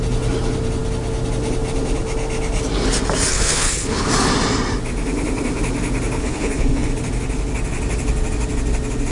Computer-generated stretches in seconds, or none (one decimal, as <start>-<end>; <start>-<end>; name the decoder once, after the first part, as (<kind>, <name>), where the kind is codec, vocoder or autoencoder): 3.3-4.1 (codec, HILCodec); 6.2-6.9